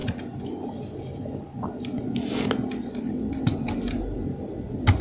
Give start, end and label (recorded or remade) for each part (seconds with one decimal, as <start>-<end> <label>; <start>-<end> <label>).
0.0-5.0 recorded